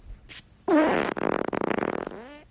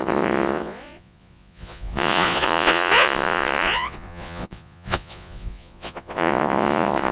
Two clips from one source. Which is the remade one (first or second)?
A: second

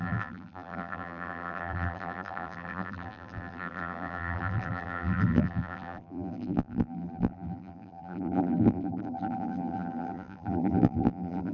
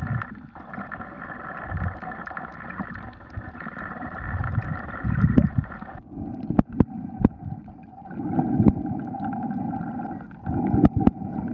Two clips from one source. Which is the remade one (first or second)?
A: first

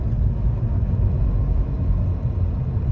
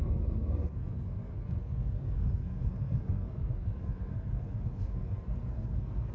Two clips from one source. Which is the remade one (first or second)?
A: second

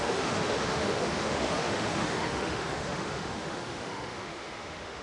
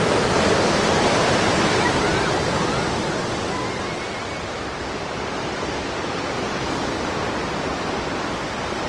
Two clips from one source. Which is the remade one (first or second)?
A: first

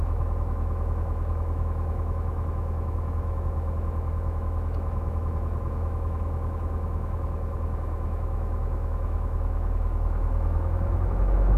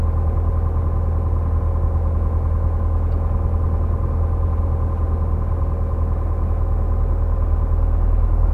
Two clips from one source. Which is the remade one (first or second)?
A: first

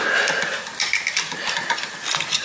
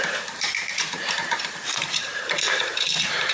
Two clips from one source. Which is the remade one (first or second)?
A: second